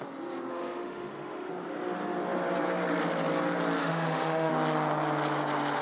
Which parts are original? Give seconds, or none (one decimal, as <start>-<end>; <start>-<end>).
0.0-0.5; 1.5-3.8; 4.5-5.8